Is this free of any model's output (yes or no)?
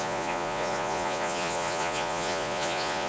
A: no